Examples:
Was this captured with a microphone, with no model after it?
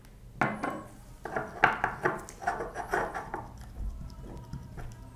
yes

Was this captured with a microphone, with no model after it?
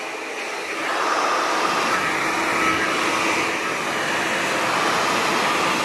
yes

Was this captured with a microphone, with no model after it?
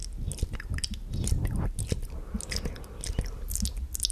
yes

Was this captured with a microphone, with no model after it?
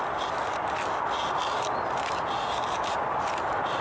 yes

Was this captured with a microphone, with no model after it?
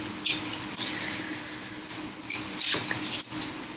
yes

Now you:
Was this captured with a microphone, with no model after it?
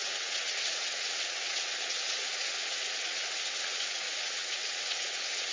no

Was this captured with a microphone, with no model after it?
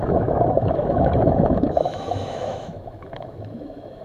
no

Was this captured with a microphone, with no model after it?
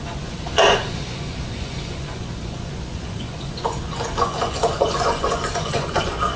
no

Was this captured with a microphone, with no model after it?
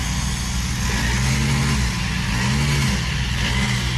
yes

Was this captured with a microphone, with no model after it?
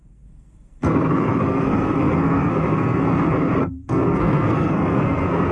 no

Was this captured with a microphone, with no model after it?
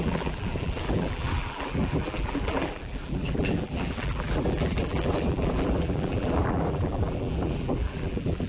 no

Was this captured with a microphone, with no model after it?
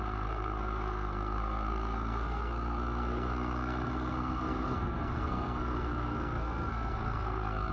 no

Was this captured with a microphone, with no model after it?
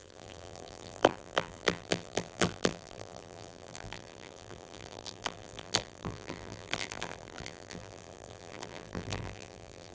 no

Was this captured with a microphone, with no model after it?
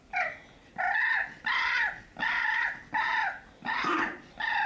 yes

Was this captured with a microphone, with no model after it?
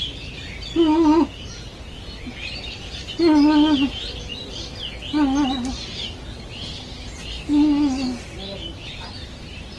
yes